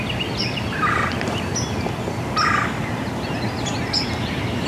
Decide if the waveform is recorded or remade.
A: recorded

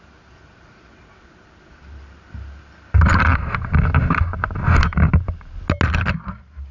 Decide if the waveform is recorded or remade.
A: recorded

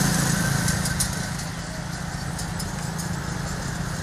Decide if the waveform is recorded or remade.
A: recorded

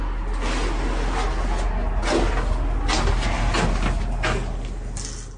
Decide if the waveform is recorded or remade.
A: recorded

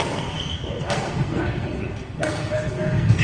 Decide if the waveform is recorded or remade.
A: remade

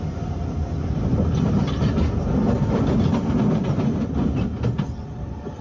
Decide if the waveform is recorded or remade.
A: recorded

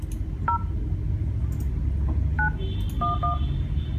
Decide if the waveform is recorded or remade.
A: recorded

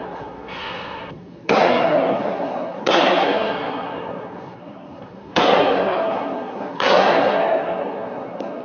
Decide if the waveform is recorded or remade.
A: remade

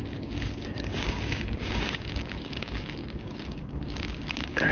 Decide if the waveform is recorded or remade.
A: remade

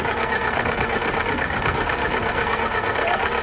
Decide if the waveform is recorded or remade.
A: remade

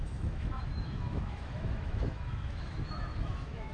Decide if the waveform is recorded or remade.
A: remade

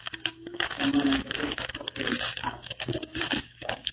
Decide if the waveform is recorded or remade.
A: remade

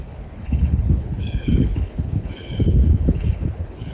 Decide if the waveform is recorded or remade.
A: remade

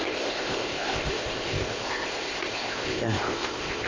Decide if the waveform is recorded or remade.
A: remade